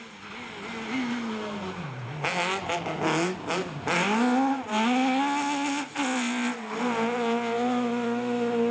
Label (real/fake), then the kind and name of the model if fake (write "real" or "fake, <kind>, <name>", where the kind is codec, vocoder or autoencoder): real